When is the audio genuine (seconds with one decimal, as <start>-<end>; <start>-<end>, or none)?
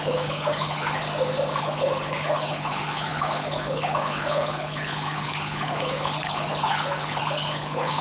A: 1.0-1.6